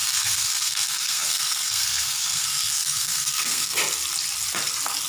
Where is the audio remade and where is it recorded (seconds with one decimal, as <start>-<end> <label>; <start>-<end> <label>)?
0.0-3.8 remade; 3.8-5.1 recorded